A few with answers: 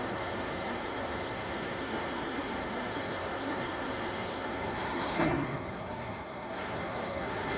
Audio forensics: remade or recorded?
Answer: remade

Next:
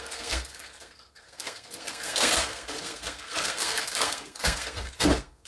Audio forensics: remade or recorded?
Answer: remade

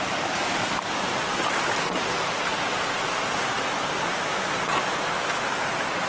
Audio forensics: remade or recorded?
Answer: recorded